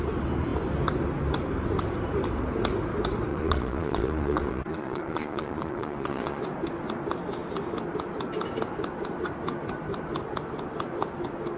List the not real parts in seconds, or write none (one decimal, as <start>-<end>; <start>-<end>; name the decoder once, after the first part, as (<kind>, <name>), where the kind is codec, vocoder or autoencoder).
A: 3.3-6.4 (vocoder, Vocos)